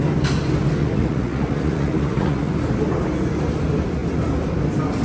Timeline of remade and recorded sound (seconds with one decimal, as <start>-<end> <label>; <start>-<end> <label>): 0.0-0.8 recorded; 0.8-2.5 remade; 2.5-5.0 recorded